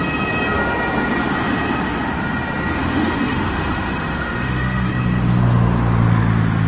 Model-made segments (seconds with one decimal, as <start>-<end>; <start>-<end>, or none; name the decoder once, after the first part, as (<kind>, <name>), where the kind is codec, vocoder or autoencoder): 2.8-4.9 (autoencoder, DAC-VAE)